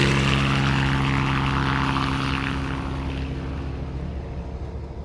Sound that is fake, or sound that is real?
real